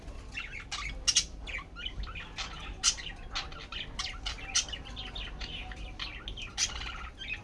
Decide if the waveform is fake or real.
real